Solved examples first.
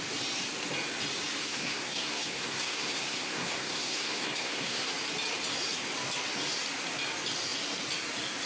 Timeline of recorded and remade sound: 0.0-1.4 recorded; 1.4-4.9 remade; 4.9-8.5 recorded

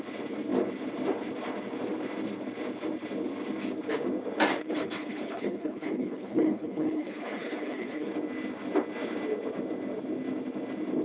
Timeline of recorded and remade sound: 0.0-4.6 recorded; 4.6-8.1 remade; 8.1-11.0 recorded

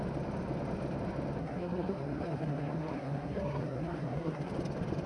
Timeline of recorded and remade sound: 0.0-1.4 recorded; 1.4-4.5 remade; 4.5-5.1 recorded

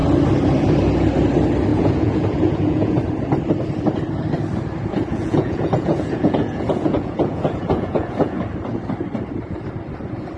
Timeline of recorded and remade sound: 0.0-1.7 recorded; 1.7-3.0 remade; 3.0-5.1 recorded; 5.1-8.4 remade; 8.4-10.4 recorded

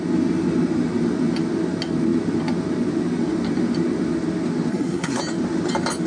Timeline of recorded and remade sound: 0.0-4.7 recorded; 4.7-5.2 remade; 5.2-6.1 recorded